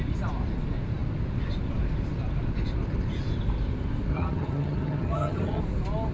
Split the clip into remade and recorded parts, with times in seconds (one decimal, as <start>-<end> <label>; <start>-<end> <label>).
0.0-4.1 recorded; 4.1-5.6 remade; 5.6-6.1 recorded